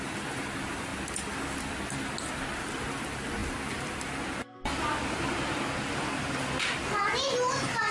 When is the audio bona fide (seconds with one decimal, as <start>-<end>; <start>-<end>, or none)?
0.0-7.9